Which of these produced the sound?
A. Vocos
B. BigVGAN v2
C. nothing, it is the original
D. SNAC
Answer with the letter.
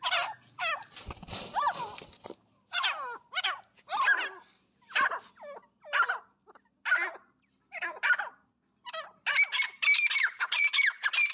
C